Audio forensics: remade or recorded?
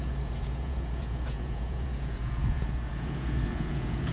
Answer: remade